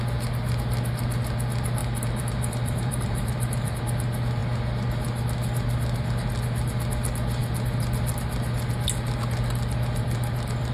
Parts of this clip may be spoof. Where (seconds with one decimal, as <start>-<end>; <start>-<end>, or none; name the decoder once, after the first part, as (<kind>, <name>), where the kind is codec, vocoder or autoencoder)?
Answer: 1.8-3.8 (vocoder, BigVGAN v2)